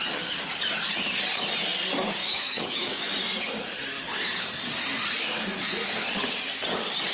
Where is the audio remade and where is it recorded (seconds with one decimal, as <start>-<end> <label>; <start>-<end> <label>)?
0.0-2.2 recorded; 2.2-3.1 remade; 3.1-7.1 recorded